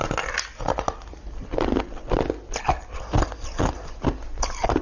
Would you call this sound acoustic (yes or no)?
yes